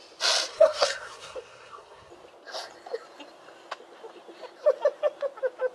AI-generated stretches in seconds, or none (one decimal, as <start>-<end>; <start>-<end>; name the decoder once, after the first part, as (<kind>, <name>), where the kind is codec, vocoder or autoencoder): 0.5-2.1 (codec, SNAC)